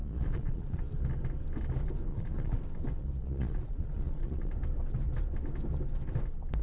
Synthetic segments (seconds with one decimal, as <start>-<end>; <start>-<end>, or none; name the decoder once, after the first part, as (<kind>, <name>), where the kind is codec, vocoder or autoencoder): 0.0-0.8 (vocoder, Vocos); 2.1-2.6; 3.0-4.5